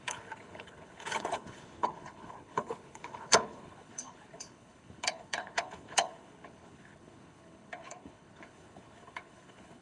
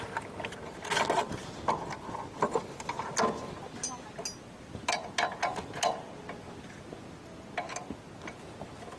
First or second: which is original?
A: second